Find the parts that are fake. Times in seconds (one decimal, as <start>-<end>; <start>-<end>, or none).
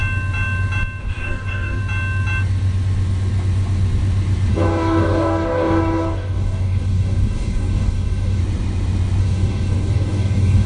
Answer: 1.0-1.8; 4.5-8.4; 9.2-10.7